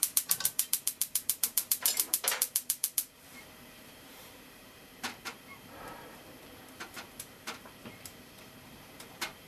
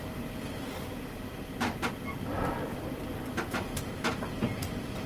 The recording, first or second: second